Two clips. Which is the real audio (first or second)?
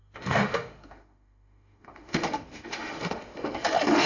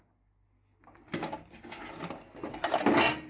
second